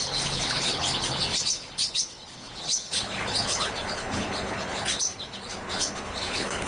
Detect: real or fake fake